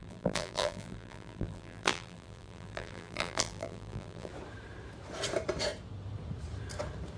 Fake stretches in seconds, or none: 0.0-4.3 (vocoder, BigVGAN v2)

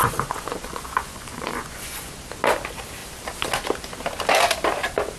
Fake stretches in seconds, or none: 0.0-2.1 (vocoder, Vocos)

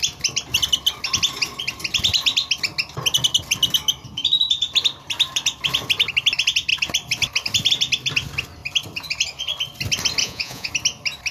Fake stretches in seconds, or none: 10.2-10.7 (vocoder, Vocos)

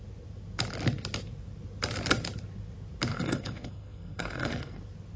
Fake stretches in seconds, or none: 3.1-4.8 (codec, SNAC)

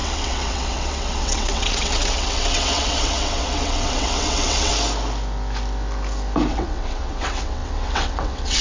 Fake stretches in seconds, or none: 0.0-4.7 (vocoder, WaveNeXt); 6.5-8.6